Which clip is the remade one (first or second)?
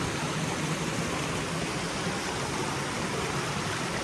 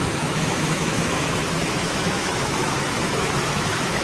second